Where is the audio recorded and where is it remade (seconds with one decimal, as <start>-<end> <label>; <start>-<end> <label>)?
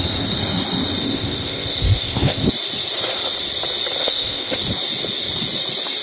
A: 0.0-1.0 recorded; 1.0-2.5 remade; 2.5-4.0 recorded; 4.0-4.5 remade; 4.5-6.0 recorded